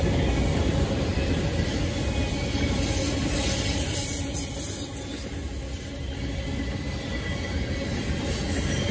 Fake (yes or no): no